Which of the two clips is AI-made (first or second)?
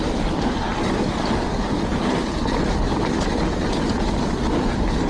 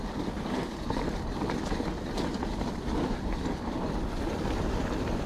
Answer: second